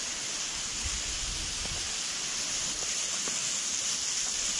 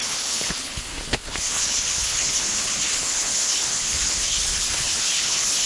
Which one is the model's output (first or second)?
second